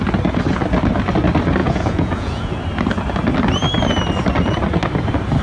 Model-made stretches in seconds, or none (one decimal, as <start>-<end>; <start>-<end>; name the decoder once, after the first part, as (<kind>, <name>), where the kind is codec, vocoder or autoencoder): 1.6-2.6 (vocoder, Vocos)